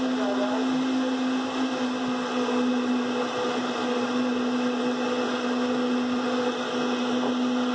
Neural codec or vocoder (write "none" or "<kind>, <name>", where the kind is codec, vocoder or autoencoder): none